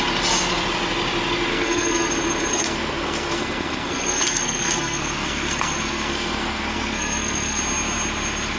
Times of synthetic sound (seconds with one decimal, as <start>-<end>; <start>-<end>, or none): 1.5-2.1; 2.5-7.6